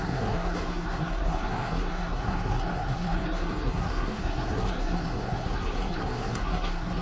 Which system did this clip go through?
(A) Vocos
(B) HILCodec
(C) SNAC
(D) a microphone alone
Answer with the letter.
C